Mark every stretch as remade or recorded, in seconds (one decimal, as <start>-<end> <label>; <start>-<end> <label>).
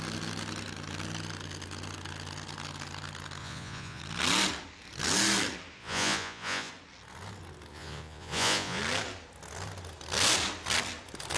0.0-3.4 recorded; 3.4-4.0 remade; 4.0-5.8 recorded; 5.8-6.7 remade; 6.7-7.7 recorded; 7.7-8.8 remade; 8.8-11.4 recorded